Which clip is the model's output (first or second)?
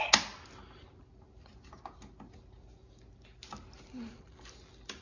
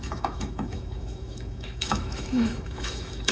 second